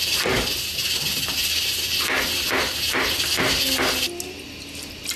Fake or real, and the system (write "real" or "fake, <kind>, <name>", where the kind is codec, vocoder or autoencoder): real